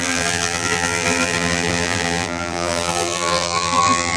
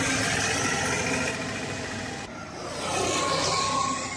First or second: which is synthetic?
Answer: first